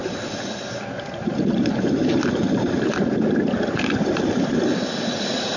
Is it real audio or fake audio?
real